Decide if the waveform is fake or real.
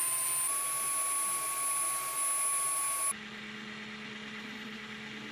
real